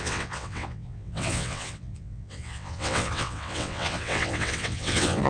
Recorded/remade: remade